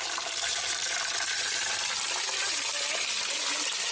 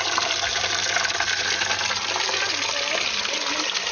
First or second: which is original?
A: second